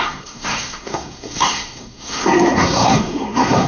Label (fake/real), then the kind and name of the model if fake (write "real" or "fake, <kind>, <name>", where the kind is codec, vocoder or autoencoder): fake, codec, SNAC